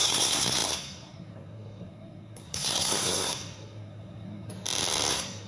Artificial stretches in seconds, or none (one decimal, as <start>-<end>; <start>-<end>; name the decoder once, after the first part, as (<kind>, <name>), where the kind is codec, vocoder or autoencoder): 0.0-4.5 (codec, SNAC); 5.1-5.5